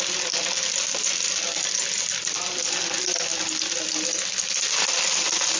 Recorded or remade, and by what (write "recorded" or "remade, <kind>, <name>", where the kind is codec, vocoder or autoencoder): recorded